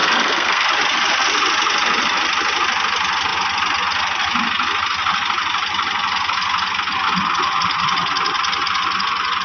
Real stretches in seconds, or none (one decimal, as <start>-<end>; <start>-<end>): 0.7-9.4